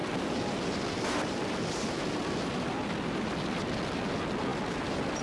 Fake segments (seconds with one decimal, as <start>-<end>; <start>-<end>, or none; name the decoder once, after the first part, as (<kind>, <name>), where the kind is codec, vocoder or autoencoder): none